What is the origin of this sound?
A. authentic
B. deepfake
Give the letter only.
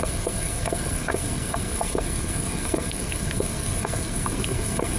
B